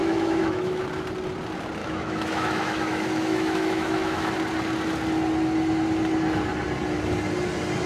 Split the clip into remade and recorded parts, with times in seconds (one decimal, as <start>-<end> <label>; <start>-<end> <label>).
0.0-0.8 remade; 0.8-1.8 recorded; 1.8-4.3 remade; 4.3-7.9 recorded